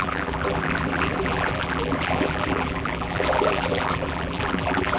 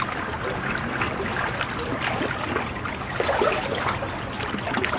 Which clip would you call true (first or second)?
second